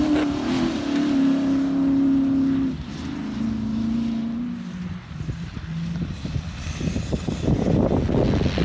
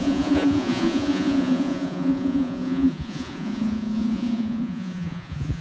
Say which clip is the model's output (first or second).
second